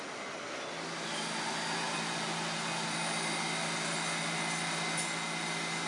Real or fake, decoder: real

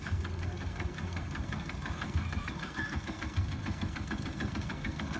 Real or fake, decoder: fake, codec, SNAC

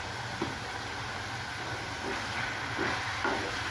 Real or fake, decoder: real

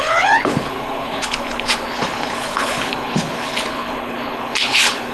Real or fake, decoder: fake, codec, HILCodec